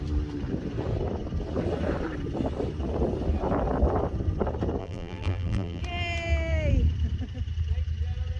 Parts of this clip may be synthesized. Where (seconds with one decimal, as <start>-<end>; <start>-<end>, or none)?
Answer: 4.8-5.8